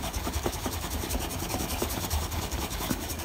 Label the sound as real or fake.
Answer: fake